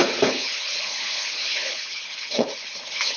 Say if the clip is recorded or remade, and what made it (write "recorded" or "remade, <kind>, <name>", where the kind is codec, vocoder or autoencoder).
remade, codec, HILCodec